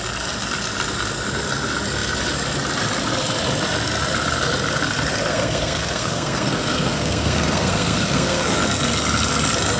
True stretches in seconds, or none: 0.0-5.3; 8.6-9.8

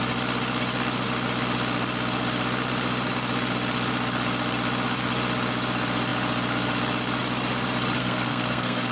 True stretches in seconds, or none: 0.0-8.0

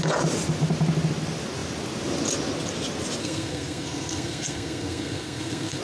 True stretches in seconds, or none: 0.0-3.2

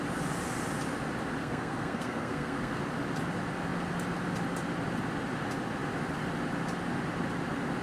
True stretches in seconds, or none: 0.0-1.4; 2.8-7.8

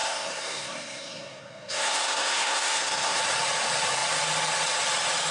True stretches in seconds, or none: 3.2-5.3